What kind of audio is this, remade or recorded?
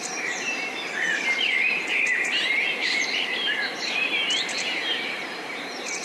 remade